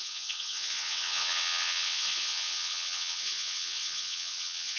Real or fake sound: fake